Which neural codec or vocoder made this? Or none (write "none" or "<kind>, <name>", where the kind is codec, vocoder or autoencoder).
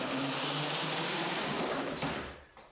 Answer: vocoder, BigVGAN v2